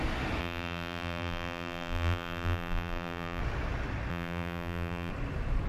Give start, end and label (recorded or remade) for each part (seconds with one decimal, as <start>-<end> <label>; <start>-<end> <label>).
0.0-0.4 recorded; 0.4-3.4 remade; 3.4-4.1 recorded; 4.1-5.1 remade; 5.1-5.7 recorded